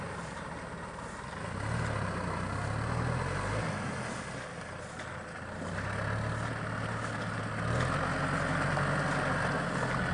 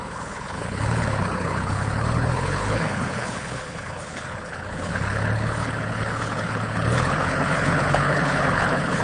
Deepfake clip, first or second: second